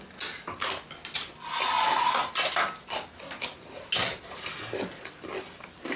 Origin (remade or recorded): recorded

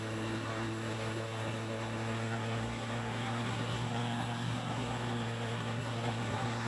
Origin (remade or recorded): remade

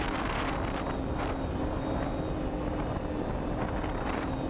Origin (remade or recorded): recorded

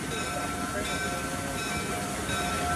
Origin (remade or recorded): recorded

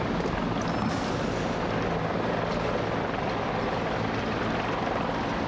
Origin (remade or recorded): recorded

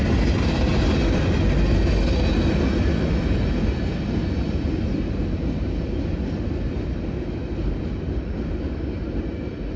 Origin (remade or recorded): recorded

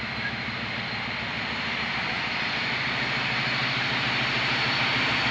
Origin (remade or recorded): recorded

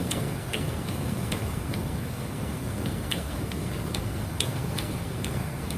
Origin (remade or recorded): remade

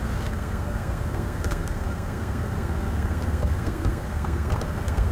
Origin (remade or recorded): remade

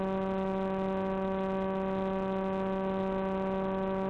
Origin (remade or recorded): recorded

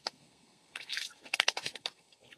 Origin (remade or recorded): remade